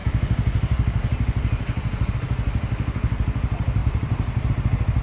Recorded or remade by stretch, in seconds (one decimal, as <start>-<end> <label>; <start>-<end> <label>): 0.0-3.8 recorded; 3.8-4.5 remade; 4.5-5.0 recorded

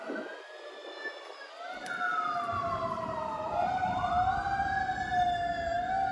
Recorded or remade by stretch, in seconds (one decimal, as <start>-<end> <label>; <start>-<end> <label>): 0.0-2.1 recorded; 2.1-4.1 remade; 4.1-6.1 recorded

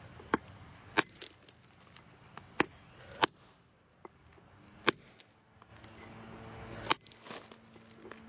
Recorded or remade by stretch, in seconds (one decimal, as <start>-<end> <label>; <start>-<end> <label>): 0.0-8.3 recorded

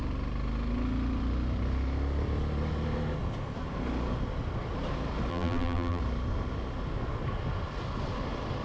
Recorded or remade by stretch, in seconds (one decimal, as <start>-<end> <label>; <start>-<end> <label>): 0.0-5.3 recorded; 5.3-6.0 remade; 6.0-8.6 recorded

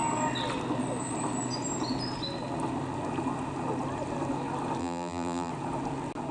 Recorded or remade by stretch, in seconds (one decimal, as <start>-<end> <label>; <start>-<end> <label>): 0.0-4.8 recorded; 4.8-5.5 remade; 5.5-6.3 recorded

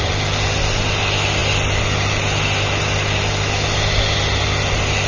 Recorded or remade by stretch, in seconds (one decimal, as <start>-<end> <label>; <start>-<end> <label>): 0.0-5.1 recorded

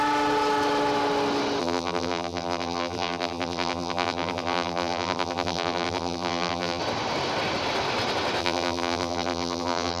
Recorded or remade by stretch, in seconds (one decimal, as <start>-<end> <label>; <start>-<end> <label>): 0.0-1.6 recorded; 1.6-6.8 remade; 6.8-8.4 recorded; 8.4-10.0 remade

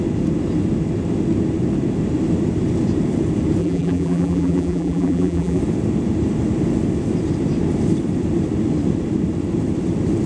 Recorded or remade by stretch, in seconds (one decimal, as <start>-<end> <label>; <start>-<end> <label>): 0.0-3.6 recorded; 3.6-5.6 remade; 5.6-10.3 recorded